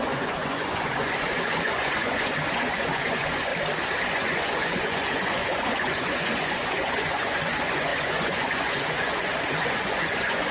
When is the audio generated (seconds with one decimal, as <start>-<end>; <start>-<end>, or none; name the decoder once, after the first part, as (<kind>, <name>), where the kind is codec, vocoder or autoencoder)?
0.0-3.5 (vocoder, Vocos); 4.1-10.5